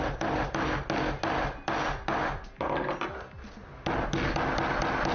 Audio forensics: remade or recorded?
recorded